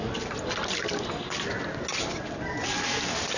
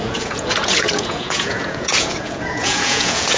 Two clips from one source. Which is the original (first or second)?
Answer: first